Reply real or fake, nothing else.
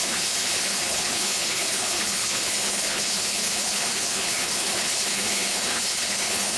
fake